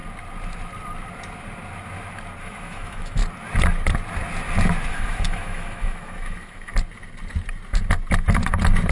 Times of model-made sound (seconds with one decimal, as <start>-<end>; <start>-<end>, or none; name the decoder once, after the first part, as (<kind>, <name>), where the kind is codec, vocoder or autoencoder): 2.4-3.2 (autoencoder, DAC-VAE); 4.9-6.7